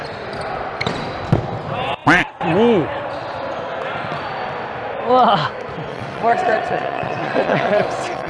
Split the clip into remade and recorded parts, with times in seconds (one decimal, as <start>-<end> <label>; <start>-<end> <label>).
0.0-5.9 recorded; 5.9-8.3 remade